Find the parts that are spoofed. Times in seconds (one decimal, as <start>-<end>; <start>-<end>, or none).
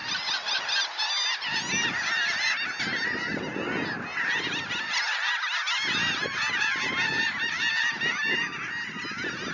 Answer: none